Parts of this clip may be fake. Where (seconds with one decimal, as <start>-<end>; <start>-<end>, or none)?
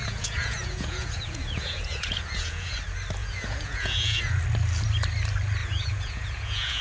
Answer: 0.0-2.7; 3.2-4.4; 5.6-6.8